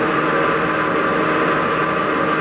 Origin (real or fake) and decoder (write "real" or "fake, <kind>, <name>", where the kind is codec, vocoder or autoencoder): real